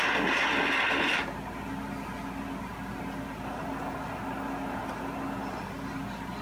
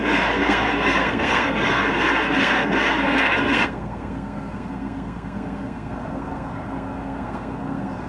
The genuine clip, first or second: first